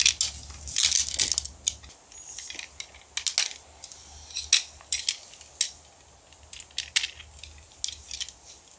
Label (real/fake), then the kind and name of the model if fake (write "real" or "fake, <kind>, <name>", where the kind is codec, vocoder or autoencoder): real